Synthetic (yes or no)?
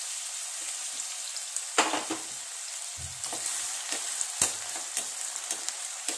no